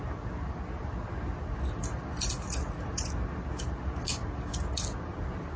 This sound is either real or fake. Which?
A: real